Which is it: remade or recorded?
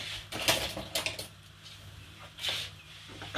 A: recorded